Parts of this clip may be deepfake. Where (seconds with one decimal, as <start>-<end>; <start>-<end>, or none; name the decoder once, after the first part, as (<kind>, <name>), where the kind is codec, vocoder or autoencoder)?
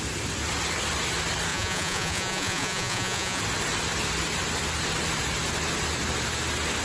1.5-3.4 (vocoder, Vocos)